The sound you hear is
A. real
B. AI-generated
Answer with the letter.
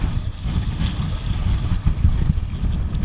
A